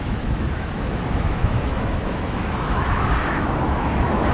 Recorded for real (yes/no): no